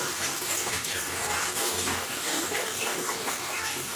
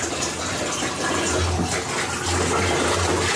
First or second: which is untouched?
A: second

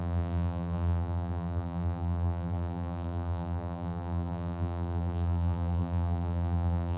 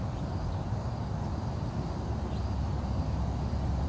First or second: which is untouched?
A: second